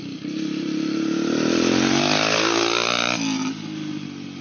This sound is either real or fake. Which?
real